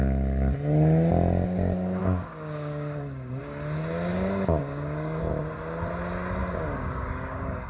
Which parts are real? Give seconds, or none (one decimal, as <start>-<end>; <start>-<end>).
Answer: 0.0-2.0; 3.4-4.1; 5.3-6.4